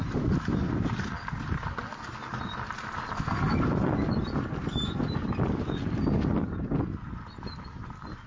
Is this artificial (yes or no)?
no